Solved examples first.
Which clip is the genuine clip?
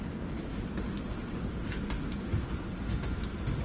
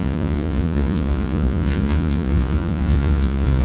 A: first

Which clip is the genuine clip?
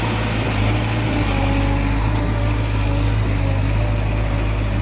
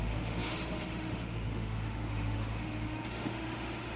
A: first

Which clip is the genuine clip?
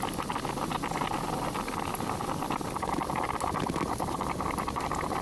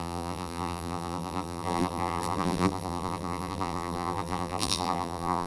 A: first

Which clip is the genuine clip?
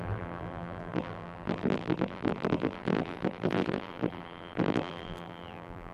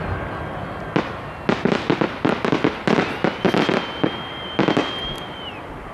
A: second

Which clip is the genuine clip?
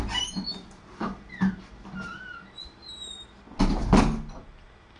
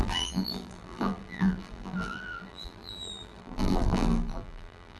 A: first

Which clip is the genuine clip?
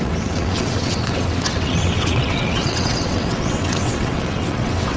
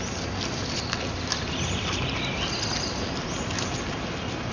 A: second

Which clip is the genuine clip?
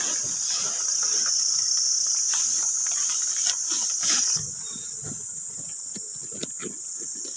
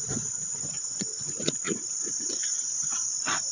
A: first